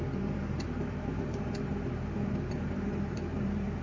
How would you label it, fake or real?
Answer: fake